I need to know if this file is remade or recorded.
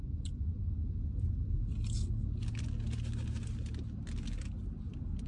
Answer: recorded